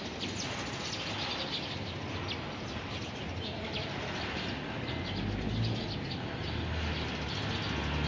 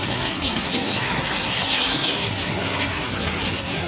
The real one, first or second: first